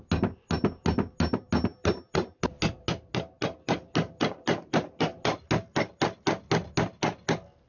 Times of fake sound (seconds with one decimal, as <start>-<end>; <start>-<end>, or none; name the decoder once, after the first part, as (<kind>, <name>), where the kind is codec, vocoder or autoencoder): none